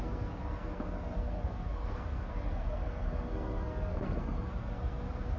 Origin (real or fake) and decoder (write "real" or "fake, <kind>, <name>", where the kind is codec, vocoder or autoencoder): fake, codec, SNAC